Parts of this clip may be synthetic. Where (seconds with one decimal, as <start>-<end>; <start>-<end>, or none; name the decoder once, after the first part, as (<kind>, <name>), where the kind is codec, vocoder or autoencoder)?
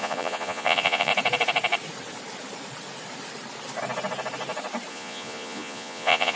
0.0-1.1 (vocoder, Vocos); 4.9-6.4